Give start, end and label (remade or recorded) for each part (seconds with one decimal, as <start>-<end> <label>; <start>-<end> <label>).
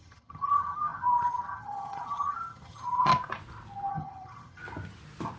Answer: 0.0-3.1 remade; 3.1-3.9 recorded; 3.9-4.6 remade; 4.6-5.4 recorded